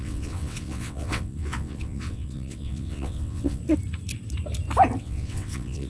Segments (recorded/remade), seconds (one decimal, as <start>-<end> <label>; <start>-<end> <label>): 0.0-3.6 remade; 3.6-5.0 recorded; 5.0-5.9 remade

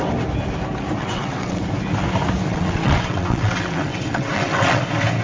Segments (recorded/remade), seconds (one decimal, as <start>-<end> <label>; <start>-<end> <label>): 0.0-1.0 recorded; 1.0-1.6 remade; 1.6-2.5 recorded; 2.5-4.8 remade; 4.8-5.2 recorded

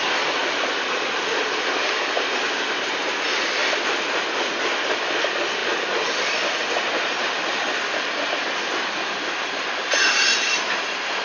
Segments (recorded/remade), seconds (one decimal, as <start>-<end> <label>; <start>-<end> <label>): 0.0-11.2 recorded

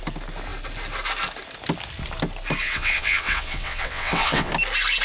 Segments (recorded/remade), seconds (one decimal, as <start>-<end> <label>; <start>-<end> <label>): 0.0-2.6 recorded; 2.6-4.5 remade; 4.5-5.0 recorded

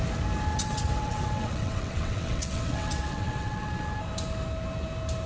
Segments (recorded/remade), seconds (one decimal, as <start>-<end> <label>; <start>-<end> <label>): 0.0-0.5 recorded; 0.5-3.7 remade; 3.7-5.3 recorded

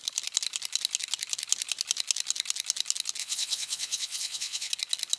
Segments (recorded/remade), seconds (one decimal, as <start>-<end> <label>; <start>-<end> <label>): 0.0-3.2 recorded; 3.2-4.7 remade; 4.7-5.2 recorded

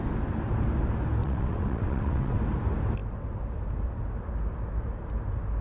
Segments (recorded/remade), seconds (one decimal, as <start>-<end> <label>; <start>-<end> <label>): 0.0-1.2 recorded; 1.2-2.4 remade; 2.4-5.6 recorded

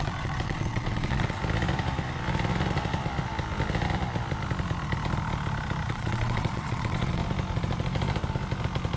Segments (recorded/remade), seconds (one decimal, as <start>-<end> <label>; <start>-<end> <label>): 0.0-1.4 remade; 1.4-5.9 recorded; 5.9-7.2 remade; 7.2-9.0 recorded